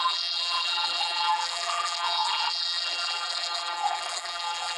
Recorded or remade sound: remade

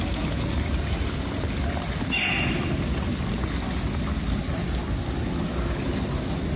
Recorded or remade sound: recorded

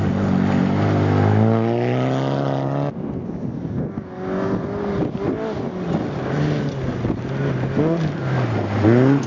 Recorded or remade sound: recorded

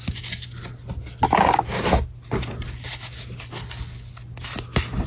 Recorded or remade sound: recorded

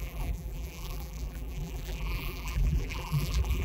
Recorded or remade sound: remade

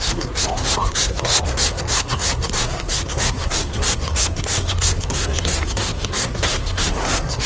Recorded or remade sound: remade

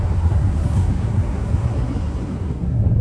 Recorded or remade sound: remade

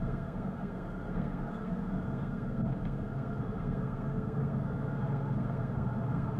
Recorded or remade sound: remade